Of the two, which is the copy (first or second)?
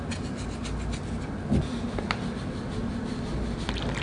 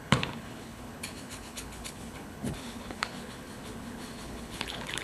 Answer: second